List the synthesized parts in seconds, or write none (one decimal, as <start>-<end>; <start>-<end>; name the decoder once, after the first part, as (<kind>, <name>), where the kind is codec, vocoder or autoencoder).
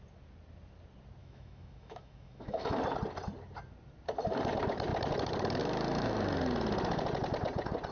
1.2-2.8 (autoencoder, DAC-VAE)